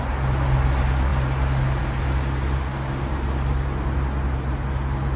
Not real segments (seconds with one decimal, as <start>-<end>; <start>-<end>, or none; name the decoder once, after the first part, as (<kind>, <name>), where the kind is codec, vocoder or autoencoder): none